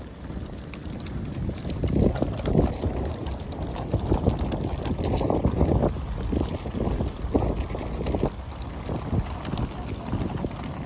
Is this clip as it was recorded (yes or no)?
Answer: yes